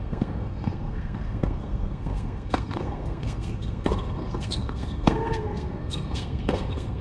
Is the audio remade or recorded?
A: remade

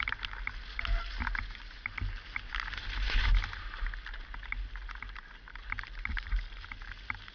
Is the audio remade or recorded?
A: recorded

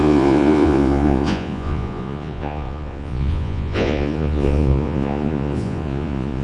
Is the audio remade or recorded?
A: remade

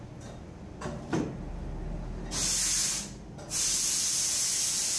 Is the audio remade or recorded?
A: recorded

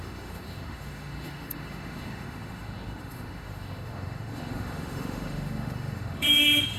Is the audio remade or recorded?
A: remade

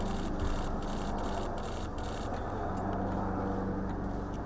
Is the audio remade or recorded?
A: recorded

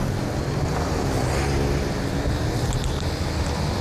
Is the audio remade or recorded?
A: recorded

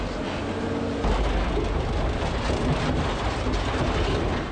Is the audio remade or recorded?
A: recorded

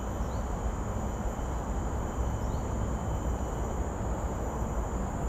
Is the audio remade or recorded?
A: recorded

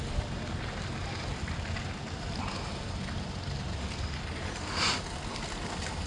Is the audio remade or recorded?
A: recorded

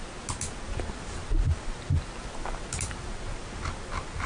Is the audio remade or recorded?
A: recorded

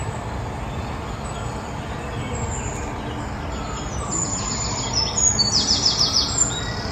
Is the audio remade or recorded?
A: recorded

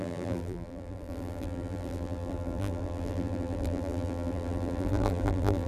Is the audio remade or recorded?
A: remade